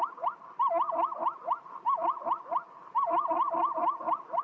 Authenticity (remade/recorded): recorded